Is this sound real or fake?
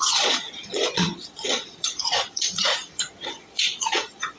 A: fake